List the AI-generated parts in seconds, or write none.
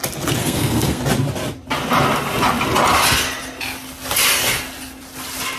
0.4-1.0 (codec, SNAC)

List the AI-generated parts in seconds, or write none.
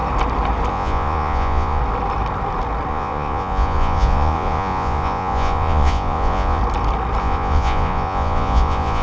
0.7-1.8 (vocoder, Vocos); 2.9-6.6; 7.2-9.0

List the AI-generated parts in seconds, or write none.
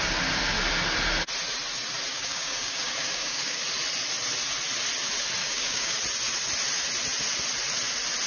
2.1-3.6 (codec, DAC); 5.4-6.0